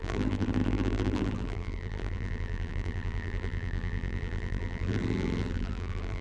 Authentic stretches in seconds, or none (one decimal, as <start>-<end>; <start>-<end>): none